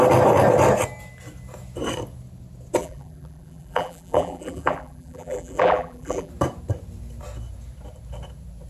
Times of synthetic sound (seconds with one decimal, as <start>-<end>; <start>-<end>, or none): 2.8-6.3